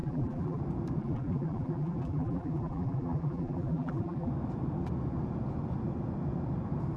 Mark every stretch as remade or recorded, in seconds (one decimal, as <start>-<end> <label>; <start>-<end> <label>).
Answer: 0.0-0.6 remade; 0.6-1.0 recorded; 1.0-4.3 remade; 4.3-7.0 recorded